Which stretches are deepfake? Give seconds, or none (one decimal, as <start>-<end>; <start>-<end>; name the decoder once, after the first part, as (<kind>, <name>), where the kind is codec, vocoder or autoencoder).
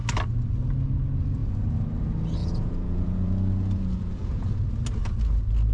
2.4-4.6 (vocoder, Vocos)